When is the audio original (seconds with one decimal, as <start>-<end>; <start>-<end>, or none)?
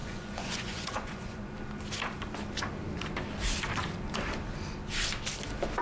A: 1.5-5.8